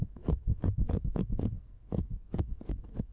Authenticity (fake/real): fake